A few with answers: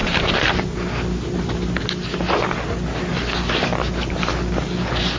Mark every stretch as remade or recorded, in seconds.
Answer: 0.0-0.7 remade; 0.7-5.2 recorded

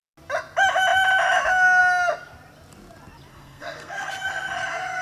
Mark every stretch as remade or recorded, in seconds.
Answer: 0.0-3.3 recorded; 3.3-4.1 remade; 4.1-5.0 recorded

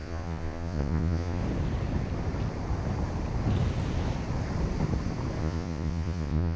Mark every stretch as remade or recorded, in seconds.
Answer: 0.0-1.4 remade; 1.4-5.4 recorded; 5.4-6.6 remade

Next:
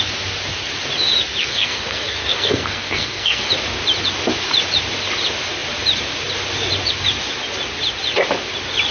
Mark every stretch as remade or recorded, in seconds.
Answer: 0.0-1.4 recorded; 1.4-3.5 remade; 3.5-8.9 recorded